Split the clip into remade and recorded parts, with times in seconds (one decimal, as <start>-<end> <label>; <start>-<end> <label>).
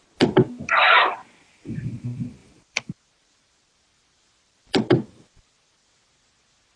0.0-0.8 recorded; 0.8-1.7 remade; 1.7-2.4 recorded; 2.4-6.1 remade; 6.1-6.8 recorded